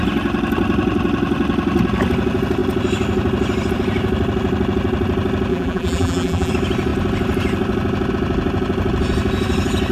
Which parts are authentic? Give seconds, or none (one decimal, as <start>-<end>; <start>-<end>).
0.0-5.5; 6.5-9.9